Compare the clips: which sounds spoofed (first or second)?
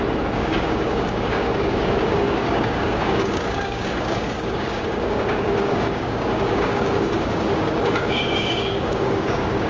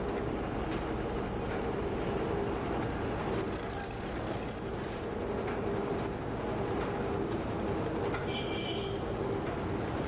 first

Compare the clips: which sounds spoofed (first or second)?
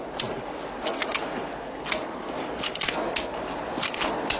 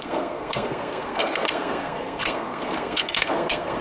second